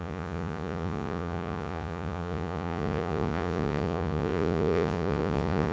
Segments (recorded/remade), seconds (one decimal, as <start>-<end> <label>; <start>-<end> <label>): 0.0-5.7 remade